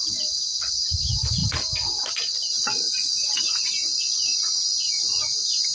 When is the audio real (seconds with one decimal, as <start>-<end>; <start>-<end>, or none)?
0.0-5.7